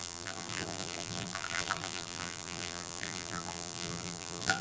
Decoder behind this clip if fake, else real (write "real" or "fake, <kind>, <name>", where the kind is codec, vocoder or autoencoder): fake, vocoder, BigVGAN v2